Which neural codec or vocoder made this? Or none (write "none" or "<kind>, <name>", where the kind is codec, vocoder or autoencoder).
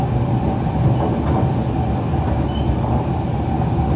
none